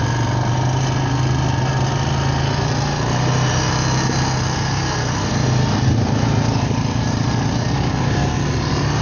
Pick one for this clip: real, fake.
real